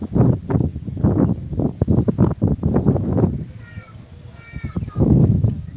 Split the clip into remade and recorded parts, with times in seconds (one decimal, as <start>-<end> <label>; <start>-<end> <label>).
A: 0.0-5.8 recorded